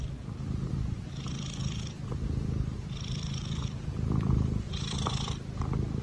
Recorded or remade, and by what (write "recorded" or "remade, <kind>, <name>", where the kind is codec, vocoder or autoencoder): recorded